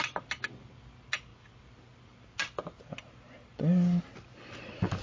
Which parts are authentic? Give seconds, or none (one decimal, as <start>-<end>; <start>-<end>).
0.0-5.0